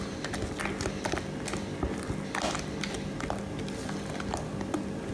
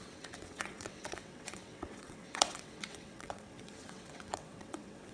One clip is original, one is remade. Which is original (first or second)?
first